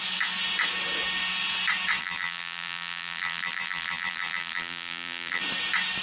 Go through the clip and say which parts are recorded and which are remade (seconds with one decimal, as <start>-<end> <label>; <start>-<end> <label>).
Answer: 0.0-2.0 recorded; 2.0-5.4 remade; 5.4-6.0 recorded